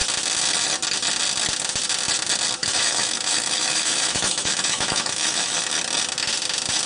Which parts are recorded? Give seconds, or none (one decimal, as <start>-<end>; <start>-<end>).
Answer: 0.0-2.6; 5.7-6.9